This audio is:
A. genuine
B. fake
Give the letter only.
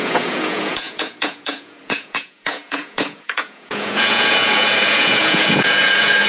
B